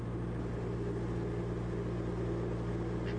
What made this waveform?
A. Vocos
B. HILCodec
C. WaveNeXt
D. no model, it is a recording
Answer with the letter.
D